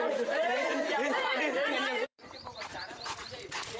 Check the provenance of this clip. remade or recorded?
remade